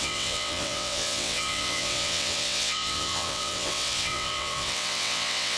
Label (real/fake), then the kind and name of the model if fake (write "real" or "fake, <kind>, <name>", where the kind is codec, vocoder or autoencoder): fake, vocoder, WaveNeXt